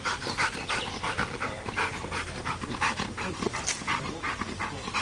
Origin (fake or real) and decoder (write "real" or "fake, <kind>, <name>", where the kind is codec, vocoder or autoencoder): fake, vocoder, BigVGAN v2